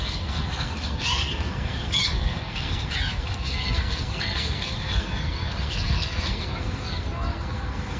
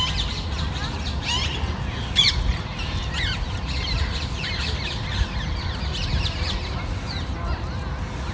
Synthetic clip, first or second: first